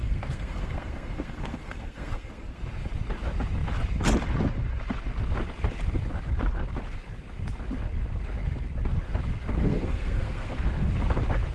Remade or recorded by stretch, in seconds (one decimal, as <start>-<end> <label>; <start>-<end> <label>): 0.0-2.6 remade; 2.6-9.6 recorded; 9.6-10.7 remade; 10.7-11.5 recorded